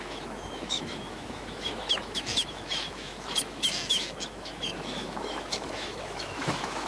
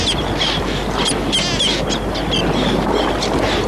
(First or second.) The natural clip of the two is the second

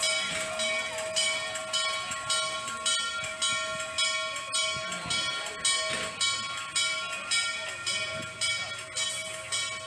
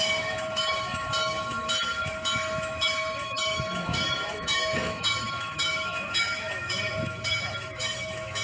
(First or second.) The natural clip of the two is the first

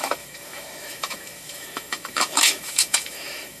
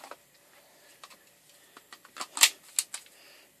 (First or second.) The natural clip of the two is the second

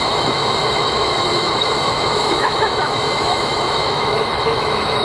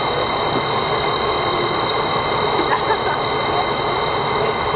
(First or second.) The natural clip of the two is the second